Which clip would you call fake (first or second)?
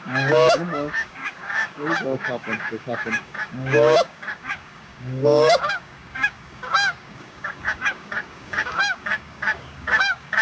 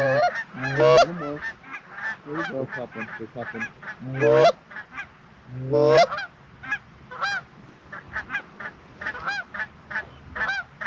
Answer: first